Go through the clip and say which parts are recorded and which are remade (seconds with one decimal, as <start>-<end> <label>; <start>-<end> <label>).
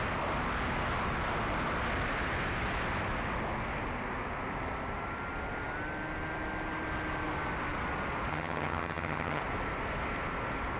0.0-8.3 recorded; 8.3-9.4 remade; 9.4-10.8 recorded